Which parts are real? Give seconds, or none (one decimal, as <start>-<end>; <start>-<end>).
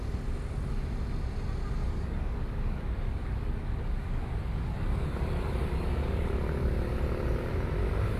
0.0-1.8; 6.3-8.2